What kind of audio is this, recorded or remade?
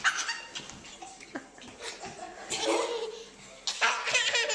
recorded